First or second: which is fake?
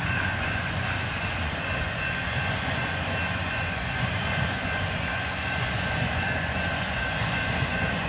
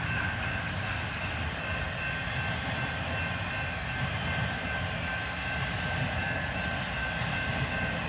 first